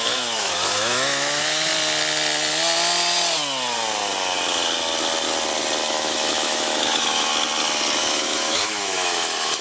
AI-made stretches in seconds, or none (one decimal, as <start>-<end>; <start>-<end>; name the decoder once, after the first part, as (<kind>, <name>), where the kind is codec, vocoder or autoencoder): 0.0-1.7 (autoencoder, DAC-VAE); 5.9-7.3; 8.0-9.6